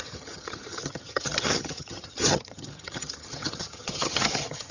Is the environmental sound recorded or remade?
remade